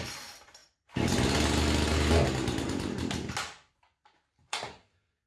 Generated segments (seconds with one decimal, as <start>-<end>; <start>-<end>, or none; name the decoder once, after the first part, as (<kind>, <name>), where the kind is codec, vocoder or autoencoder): 4.5-5.3 (codec, SNAC)